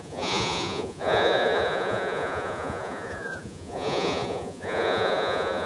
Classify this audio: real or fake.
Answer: fake